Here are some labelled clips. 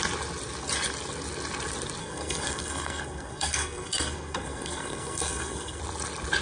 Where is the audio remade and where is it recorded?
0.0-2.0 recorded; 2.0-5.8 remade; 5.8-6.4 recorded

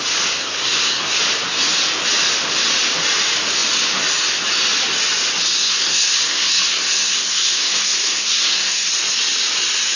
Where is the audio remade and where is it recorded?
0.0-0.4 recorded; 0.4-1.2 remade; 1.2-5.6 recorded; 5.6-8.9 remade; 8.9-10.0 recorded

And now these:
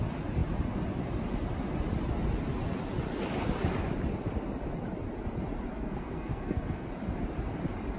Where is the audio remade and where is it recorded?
0.0-5.7 recorded; 5.7-6.9 remade; 6.9-8.0 recorded

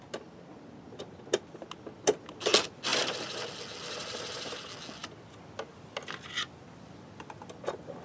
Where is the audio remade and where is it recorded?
0.0-8.0 recorded

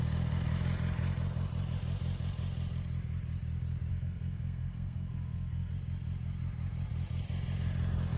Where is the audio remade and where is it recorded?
0.0-3.9 recorded; 3.9-5.7 remade; 5.7-8.2 recorded